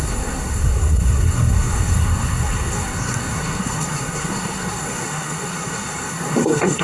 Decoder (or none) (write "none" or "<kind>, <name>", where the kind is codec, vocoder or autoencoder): codec, SNAC